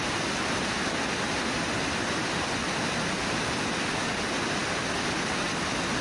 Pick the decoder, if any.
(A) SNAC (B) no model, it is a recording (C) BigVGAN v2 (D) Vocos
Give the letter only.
B